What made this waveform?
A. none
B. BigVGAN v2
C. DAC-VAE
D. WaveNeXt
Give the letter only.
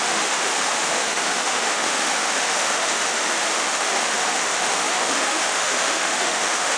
C